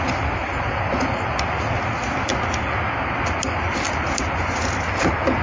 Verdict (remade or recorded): recorded